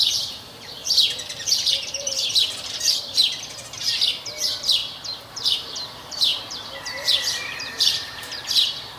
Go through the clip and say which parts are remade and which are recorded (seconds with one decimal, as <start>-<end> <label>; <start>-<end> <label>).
0.0-3.2 remade; 3.2-4.3 recorded; 4.3-4.8 remade; 4.8-5.3 recorded; 5.3-9.0 remade